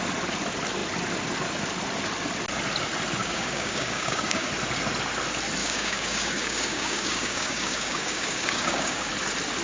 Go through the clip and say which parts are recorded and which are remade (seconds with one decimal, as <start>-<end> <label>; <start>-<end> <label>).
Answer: 0.0-3.2 recorded; 3.2-4.5 remade; 4.5-5.6 recorded; 5.6-9.1 remade; 9.1-9.6 recorded